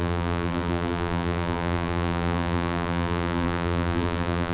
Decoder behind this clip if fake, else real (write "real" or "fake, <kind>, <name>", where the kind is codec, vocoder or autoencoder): fake, vocoder, BigVGAN v2